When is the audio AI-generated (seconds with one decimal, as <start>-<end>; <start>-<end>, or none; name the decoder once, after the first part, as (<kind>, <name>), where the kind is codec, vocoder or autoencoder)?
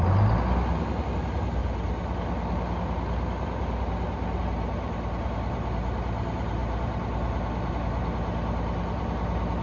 none